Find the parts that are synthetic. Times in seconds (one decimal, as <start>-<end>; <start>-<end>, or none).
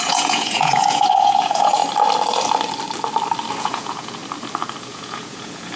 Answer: 0.0-1.8; 3.6-4.2; 4.8-5.8